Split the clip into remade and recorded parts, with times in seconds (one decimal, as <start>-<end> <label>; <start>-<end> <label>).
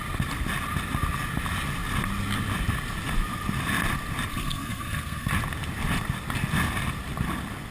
0.0-4.3 recorded; 4.3-5.3 remade; 5.3-7.7 recorded